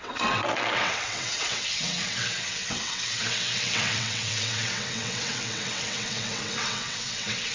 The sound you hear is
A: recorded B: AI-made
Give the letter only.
B